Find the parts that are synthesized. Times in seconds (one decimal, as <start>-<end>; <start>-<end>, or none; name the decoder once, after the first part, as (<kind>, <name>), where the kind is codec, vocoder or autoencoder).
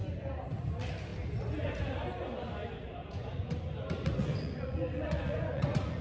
3.0-3.7 (vocoder, Vocos); 4.2-6.0